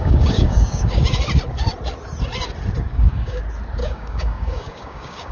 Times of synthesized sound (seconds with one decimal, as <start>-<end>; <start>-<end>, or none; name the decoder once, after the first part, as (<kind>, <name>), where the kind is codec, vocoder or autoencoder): 0.0-1.0 (codec, DAC); 2.9-3.4; 3.8-5.3